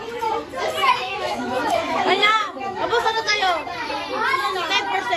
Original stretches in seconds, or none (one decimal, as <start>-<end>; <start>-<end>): 0.0-0.8; 3.9-5.2